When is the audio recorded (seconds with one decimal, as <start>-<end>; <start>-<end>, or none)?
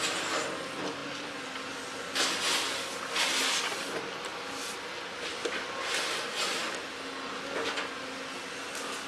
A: 0.0-9.1